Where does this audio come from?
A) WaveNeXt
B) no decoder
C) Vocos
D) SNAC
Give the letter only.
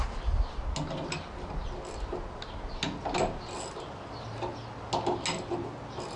B